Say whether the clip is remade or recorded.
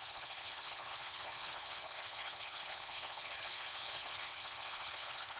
remade